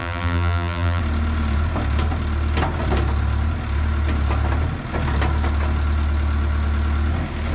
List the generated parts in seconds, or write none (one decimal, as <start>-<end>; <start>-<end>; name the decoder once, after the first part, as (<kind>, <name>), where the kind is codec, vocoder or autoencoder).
0.0-1.0 (vocoder, BigVGAN v2)